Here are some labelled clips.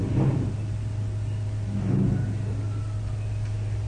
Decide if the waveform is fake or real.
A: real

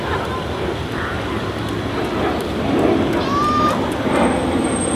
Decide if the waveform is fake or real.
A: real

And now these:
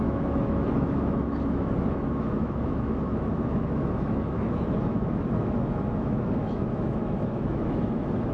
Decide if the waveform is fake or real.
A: fake